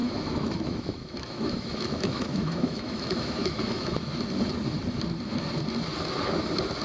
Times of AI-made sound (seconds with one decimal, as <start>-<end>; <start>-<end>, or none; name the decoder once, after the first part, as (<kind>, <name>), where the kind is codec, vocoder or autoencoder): 0.0-4.1 (autoencoder, DAC-VAE)